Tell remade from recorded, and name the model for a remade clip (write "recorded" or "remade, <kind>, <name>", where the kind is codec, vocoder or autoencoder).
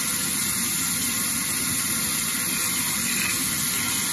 recorded